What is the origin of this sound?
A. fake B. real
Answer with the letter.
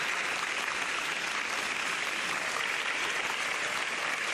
B